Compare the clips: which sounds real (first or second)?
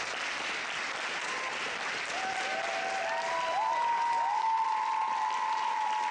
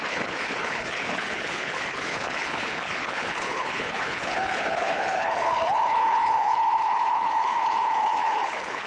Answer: first